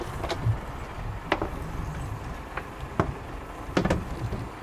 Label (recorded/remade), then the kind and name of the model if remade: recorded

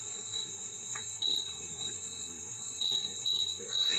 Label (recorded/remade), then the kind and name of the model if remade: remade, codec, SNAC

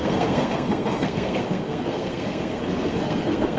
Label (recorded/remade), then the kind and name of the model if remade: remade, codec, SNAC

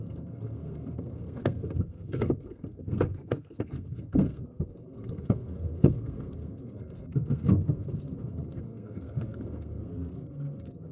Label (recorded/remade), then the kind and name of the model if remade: remade, codec, SNAC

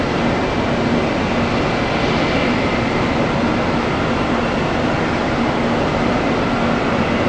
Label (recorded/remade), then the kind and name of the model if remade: recorded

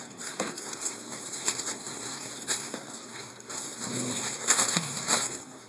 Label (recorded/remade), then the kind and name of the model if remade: remade, codec, SNAC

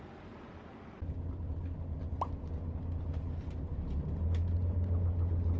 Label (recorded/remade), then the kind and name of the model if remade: recorded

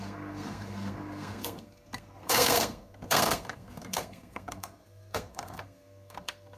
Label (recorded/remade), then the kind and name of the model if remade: remade, codec, SNAC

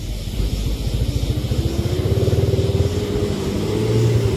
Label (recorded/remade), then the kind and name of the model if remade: recorded